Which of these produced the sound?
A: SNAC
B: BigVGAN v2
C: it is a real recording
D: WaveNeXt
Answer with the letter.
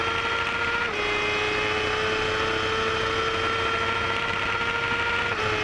C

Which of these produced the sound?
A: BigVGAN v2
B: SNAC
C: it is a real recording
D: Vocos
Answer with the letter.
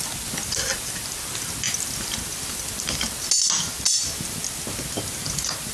C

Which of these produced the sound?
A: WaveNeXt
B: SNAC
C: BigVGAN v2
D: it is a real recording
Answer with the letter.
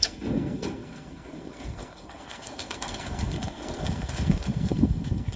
B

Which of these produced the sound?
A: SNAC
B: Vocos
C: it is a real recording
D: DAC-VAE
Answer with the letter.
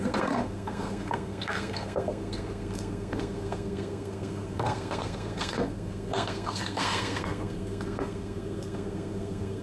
A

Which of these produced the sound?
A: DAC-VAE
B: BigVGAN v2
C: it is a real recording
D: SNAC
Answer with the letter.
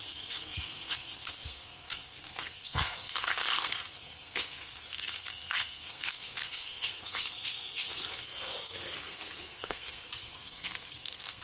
D